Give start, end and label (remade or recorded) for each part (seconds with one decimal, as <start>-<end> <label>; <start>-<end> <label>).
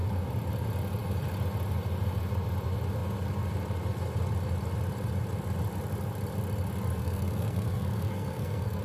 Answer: 0.0-7.0 recorded; 7.0-8.8 remade